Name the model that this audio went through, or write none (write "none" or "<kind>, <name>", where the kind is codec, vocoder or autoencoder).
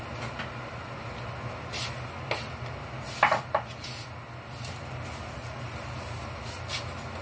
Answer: none